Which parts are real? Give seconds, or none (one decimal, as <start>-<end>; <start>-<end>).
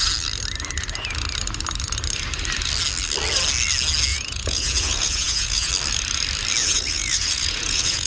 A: 0.0-4.1; 5.7-6.6